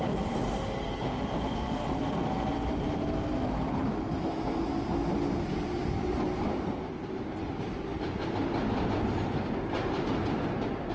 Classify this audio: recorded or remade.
recorded